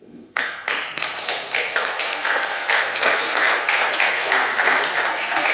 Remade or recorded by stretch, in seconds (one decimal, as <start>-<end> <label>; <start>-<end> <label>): 0.0-4.5 remade; 4.5-5.1 recorded; 5.1-5.5 remade